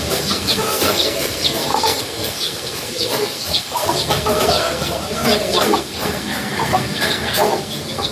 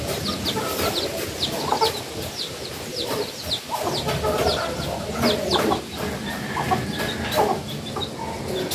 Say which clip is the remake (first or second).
first